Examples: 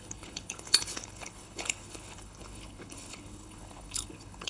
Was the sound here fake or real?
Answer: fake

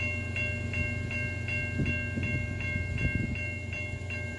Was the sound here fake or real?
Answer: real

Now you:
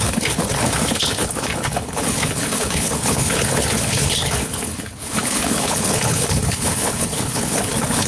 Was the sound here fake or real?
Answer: fake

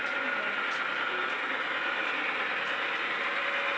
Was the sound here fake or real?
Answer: real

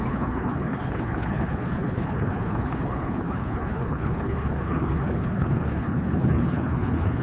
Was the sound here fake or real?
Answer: fake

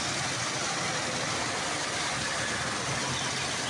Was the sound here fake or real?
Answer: real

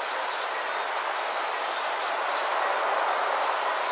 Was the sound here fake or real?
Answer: real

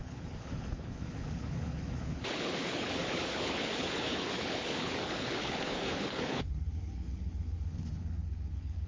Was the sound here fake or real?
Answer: fake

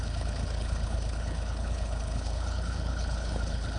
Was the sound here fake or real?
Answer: fake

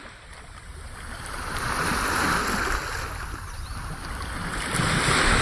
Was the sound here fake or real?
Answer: real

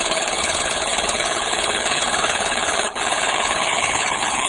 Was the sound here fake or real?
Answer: fake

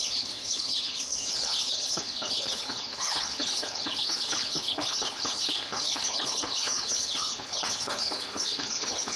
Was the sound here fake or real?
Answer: fake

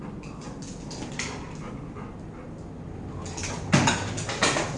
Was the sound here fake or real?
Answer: real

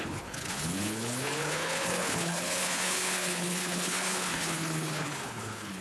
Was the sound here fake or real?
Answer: fake